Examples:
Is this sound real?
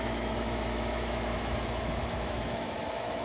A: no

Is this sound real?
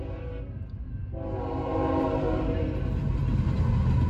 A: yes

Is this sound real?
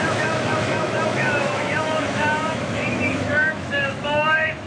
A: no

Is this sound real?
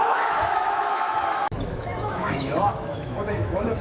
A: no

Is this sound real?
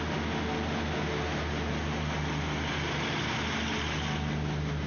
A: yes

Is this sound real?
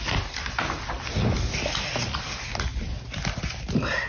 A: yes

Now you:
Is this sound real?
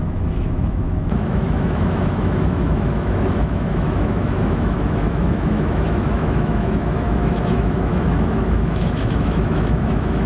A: no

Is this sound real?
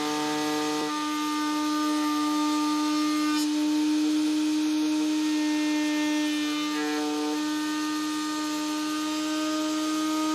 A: yes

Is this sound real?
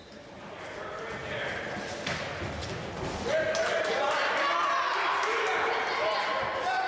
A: yes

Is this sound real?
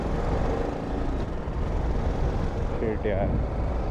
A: yes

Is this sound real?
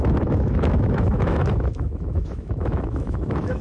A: no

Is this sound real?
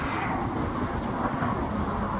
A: yes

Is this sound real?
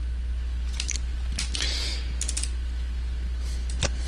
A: yes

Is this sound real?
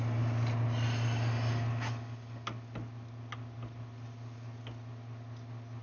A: yes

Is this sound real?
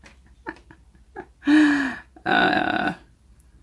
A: yes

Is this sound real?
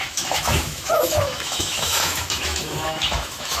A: no